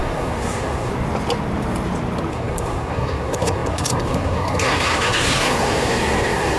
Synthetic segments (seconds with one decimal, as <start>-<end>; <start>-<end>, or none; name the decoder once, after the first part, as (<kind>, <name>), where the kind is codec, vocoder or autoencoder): 0.0-0.9 (codec, SNAC); 2.3-6.6